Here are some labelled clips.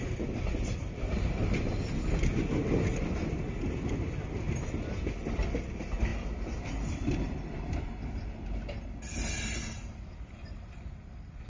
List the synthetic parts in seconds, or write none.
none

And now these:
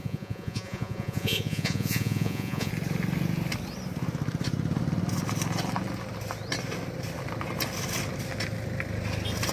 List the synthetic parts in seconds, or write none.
0.0-2.7 (vocoder, Vocos)

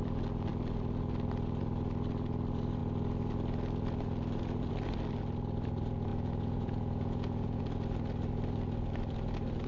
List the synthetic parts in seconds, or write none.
6.1-7.6 (vocoder, Vocos)

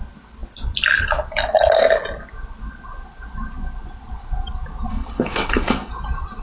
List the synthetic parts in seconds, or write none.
4.9-5.9 (codec, HILCodec)

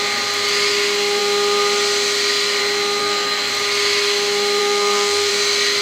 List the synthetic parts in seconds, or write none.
3.0-3.5 (codec, SNAC); 4.6-5.3

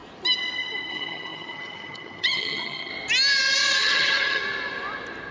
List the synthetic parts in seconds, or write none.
0.9-2.9 (vocoder, HiFi-GAN); 3.8-4.4

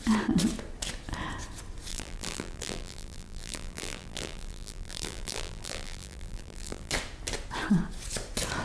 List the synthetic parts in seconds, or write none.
1.9-6.9 (vocoder, BigVGAN v2)